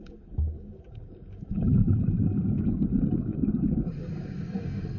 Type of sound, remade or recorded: remade